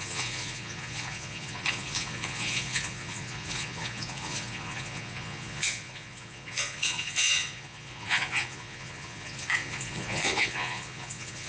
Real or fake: fake